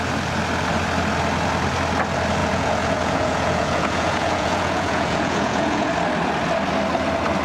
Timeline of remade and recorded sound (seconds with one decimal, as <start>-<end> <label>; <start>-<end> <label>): 0.0-2.4 recorded; 2.4-5.9 remade; 5.9-7.4 recorded